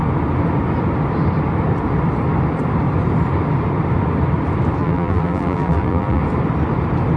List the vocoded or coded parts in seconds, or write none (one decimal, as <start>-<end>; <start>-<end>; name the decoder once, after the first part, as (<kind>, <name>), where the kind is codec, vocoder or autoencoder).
4.8-6.2 (vocoder, BigVGAN v2)